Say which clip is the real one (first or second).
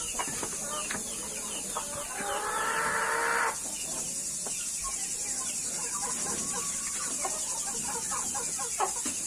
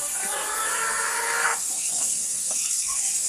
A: first